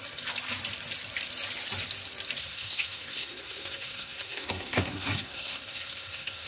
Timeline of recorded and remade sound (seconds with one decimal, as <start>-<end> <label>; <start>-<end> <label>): 0.0-2.4 recorded; 2.4-6.5 remade